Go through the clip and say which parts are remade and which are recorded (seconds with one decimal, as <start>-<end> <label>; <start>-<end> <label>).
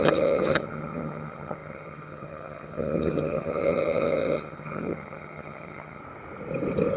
0.0-6.0 remade; 6.0-7.0 recorded